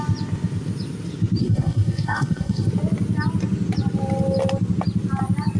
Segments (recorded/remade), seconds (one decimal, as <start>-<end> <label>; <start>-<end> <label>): 0.0-1.4 recorded; 1.4-2.7 remade; 2.7-5.6 recorded